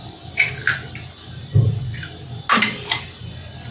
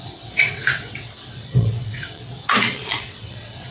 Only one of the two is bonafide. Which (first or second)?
first